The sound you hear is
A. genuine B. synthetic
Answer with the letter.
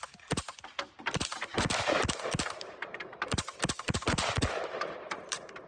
B